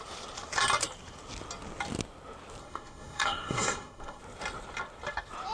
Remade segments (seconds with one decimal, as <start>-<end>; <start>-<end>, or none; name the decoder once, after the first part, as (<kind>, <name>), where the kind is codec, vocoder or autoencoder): 2.6-4.2 (codec, SNAC)